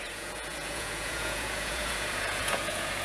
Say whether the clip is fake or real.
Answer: fake